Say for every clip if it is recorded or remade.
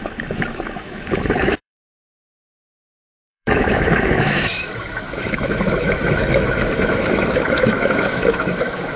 remade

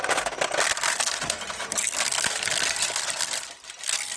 recorded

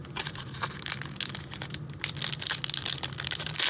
recorded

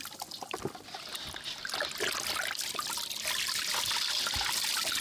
recorded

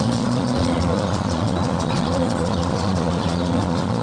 remade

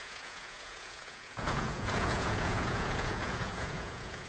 remade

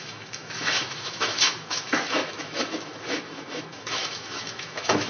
remade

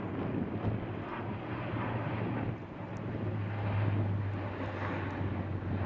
recorded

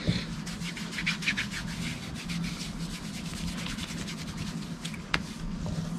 recorded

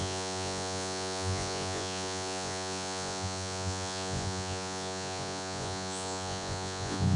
remade